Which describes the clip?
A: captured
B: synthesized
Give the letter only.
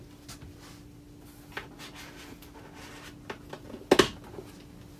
A